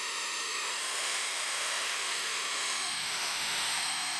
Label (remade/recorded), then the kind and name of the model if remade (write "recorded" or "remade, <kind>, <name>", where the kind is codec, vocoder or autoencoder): remade, autoencoder, DAC-VAE